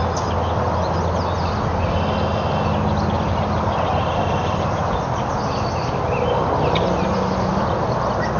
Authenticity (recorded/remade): recorded